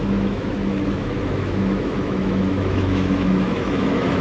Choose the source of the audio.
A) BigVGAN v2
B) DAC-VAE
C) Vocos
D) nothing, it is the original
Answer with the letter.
B